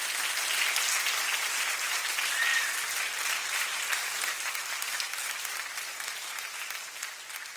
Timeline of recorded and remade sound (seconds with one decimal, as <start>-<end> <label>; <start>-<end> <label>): 0.0-7.6 recorded